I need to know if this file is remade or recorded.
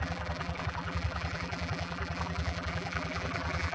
remade